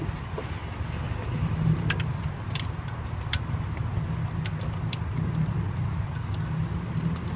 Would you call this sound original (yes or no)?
yes